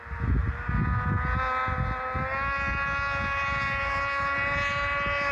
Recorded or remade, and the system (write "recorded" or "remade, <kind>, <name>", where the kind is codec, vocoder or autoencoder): recorded